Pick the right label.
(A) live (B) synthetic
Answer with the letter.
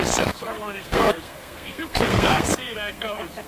B